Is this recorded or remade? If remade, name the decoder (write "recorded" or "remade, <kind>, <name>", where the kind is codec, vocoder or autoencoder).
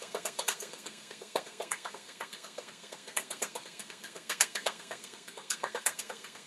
remade, codec, SNAC